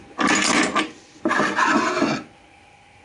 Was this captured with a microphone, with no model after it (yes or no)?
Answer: yes